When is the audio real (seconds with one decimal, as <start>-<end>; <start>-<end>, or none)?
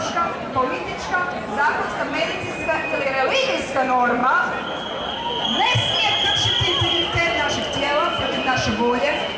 0.0-9.4